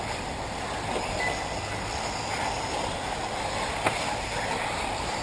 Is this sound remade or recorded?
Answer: recorded